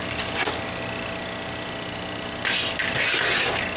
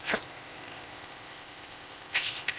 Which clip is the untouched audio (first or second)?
first